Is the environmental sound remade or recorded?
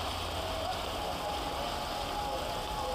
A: recorded